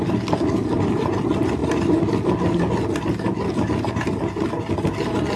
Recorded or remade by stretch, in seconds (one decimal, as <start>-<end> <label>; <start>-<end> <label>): 0.0-5.4 recorded

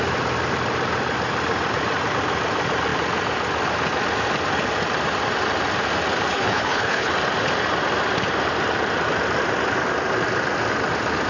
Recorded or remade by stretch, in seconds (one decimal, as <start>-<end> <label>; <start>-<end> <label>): 0.0-6.3 recorded; 6.3-7.1 remade; 7.1-11.3 recorded

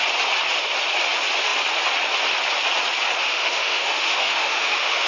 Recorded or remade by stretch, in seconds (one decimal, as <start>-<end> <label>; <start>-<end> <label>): 0.0-3.3 recorded; 3.3-5.1 remade

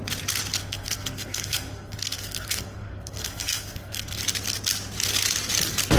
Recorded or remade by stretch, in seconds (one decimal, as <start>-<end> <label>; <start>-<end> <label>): 0.0-0.6 recorded; 0.6-4.2 remade; 4.2-6.0 recorded

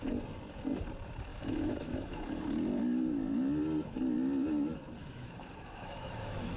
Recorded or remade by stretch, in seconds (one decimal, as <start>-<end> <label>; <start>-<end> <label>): 0.0-1.3 recorded; 1.3-2.4 remade; 2.4-5.0 recorded; 5.0-6.6 remade

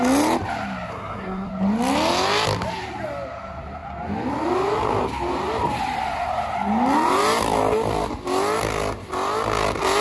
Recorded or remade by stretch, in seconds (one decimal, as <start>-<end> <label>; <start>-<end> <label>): 0.0-0.9 recorded; 0.9-1.5 remade; 1.5-10.0 recorded

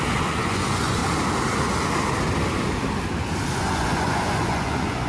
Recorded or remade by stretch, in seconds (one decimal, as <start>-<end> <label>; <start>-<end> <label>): 0.0-1.0 remade; 1.0-3.5 recorded; 3.5-5.1 remade

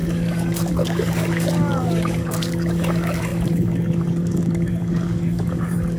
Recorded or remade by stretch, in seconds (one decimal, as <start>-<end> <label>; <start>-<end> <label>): 0.0-6.0 remade